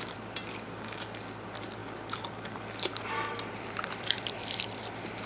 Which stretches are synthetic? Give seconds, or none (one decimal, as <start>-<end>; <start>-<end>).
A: 1.8-5.3